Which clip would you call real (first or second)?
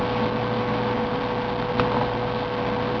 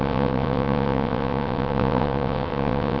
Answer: first